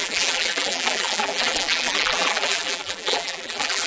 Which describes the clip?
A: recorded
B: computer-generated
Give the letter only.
B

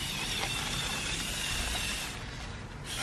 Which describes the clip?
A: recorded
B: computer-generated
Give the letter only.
A